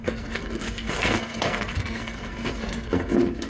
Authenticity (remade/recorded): remade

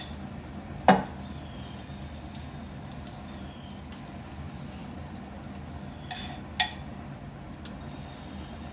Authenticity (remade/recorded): recorded